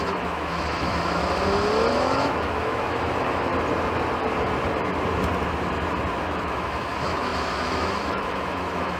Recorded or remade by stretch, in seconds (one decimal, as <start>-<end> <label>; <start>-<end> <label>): 0.0-1.2 remade; 1.2-1.9 recorded; 1.9-3.5 remade; 3.5-6.2 recorded; 6.2-9.0 remade